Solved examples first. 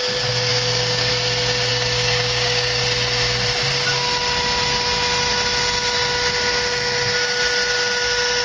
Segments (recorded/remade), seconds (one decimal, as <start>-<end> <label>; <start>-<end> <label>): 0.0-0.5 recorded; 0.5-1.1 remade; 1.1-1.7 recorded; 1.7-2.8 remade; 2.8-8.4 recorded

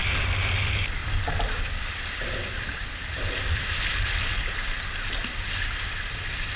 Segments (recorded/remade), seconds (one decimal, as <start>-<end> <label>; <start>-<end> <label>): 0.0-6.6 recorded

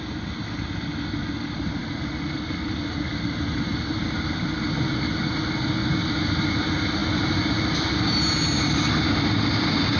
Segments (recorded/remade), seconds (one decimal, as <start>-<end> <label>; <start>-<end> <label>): 0.0-10.0 recorded

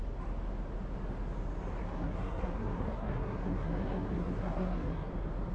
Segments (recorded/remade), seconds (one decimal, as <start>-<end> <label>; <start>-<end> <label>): 0.0-1.8 recorded; 1.8-5.1 remade; 5.1-5.5 recorded

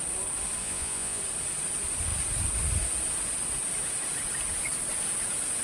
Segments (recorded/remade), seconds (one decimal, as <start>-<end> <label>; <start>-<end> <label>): 0.0-0.6 recorded; 0.6-1.2 remade; 1.2-5.6 recorded

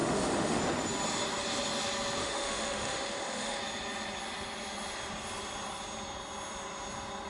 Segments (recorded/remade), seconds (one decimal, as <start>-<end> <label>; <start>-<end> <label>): 0.0-0.6 remade; 0.6-2.2 recorded; 2.2-3.6 remade; 3.6-7.3 recorded

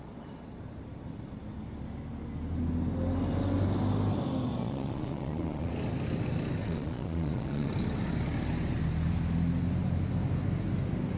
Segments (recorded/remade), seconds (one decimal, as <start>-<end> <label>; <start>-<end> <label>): 0.0-4.6 recorded; 4.6-5.7 remade; 5.7-6.6 recorded; 6.6-7.7 remade; 7.7-11.2 recorded

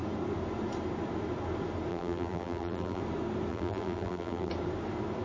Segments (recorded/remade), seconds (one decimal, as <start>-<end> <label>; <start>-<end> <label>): 0.0-1.9 recorded; 1.9-3.0 remade; 3.0-3.5 recorded; 3.5-4.5 remade; 4.5-5.2 recorded